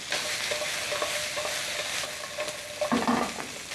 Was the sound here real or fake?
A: real